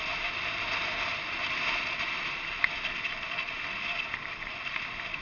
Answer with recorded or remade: recorded